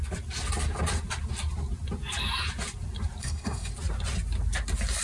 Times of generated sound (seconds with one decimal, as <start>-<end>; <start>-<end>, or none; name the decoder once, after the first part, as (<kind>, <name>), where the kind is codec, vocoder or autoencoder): 3.2-3.7 (codec, SNAC)